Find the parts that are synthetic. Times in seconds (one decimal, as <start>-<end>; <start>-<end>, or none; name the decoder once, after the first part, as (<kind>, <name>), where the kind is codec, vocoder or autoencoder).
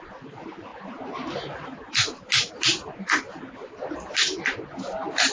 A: none